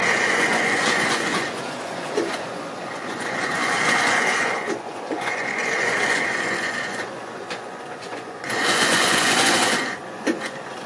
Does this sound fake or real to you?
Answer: fake